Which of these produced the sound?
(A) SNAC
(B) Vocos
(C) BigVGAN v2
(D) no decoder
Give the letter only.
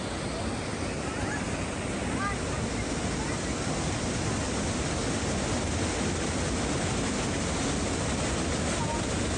D